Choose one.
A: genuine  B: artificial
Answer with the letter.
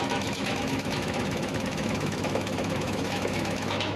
B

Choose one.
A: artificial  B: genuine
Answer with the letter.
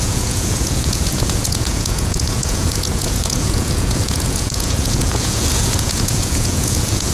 A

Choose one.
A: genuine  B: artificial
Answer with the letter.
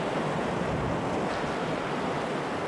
A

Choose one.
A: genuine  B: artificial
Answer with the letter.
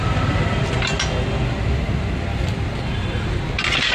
A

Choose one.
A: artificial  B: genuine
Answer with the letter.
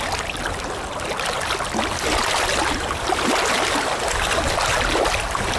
B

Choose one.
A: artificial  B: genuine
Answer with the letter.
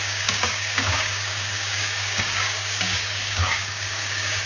A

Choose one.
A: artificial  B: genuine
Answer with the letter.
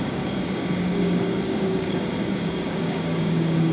A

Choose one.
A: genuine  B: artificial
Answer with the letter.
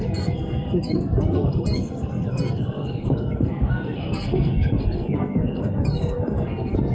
B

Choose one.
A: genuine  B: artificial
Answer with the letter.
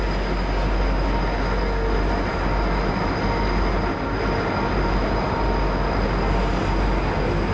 A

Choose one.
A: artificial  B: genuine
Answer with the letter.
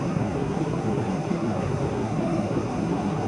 A